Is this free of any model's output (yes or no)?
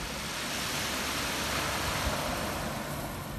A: yes